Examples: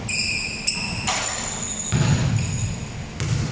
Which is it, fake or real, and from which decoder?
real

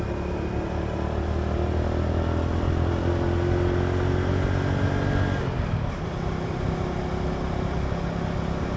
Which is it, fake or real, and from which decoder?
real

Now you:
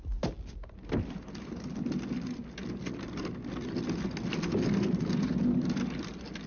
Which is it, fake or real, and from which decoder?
real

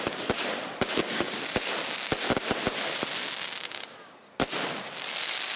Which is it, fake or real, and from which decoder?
real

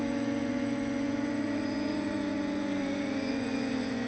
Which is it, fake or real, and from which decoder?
fake, vocoder, Vocos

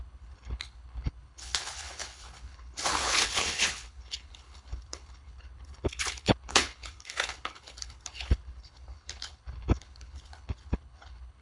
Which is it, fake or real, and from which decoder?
fake, codec, HILCodec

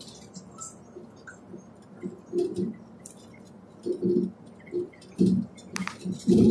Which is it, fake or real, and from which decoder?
real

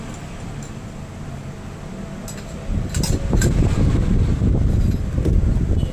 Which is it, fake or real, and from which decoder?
real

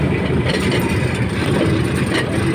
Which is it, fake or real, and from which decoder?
real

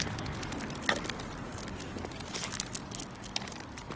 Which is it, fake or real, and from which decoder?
real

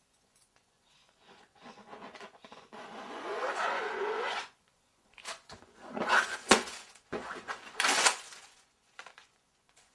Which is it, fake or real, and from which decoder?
fake, vocoder, Vocos